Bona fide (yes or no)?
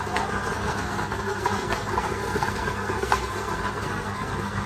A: no